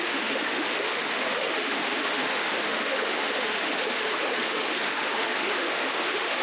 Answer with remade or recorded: remade